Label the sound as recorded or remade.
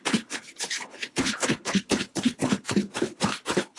remade